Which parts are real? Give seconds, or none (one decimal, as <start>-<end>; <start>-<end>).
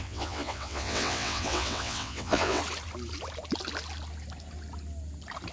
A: 2.6-5.5